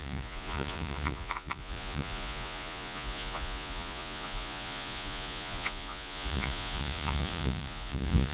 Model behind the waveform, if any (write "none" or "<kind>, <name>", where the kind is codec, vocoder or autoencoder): vocoder, Vocos